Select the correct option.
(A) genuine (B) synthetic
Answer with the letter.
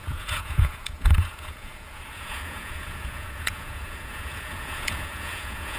B